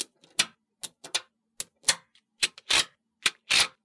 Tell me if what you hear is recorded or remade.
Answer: recorded